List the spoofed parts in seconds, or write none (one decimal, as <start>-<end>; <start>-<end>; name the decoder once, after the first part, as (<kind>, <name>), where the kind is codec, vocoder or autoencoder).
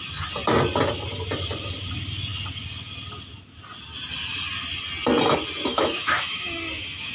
5.7-7.1 (autoencoder, DAC-VAE)